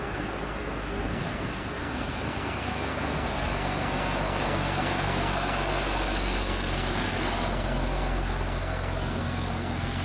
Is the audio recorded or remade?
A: remade